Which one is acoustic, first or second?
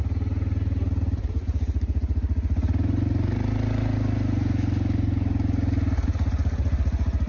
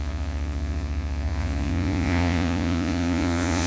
first